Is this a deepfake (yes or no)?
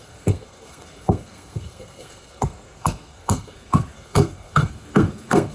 yes